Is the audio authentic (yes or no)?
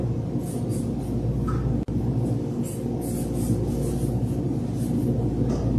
yes